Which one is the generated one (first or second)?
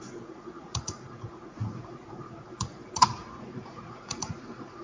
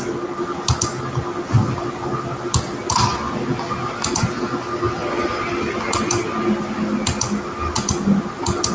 first